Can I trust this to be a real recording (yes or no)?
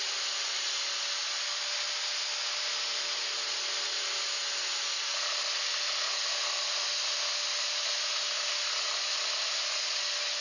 yes